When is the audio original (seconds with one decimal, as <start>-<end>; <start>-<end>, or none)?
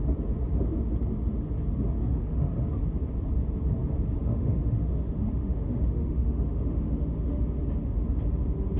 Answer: 0.0-2.0; 2.5-4.2; 7.4-8.8